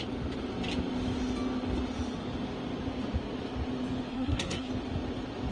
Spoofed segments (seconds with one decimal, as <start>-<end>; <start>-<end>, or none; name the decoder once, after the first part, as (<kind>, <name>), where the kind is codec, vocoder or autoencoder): 4.1-4.7 (codec, SNAC)